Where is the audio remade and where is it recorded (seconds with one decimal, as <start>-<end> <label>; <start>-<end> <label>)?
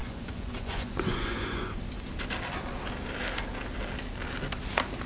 0.0-1.7 remade; 1.7-5.1 recorded